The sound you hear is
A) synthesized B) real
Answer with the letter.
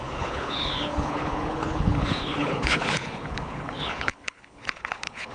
A